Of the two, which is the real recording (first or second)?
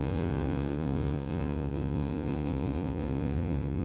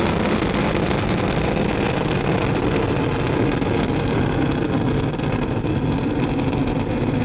second